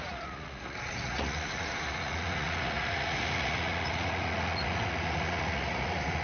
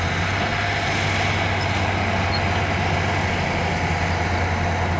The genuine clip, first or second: second